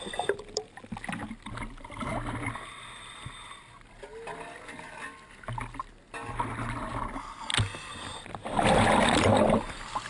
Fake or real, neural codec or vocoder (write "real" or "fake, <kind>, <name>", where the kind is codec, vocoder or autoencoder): real